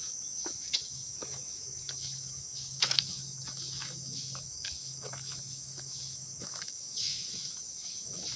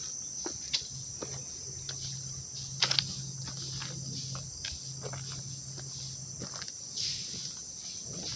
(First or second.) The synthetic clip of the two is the first